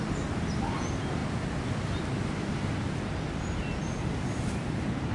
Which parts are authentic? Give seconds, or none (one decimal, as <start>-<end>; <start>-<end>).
0.0-5.1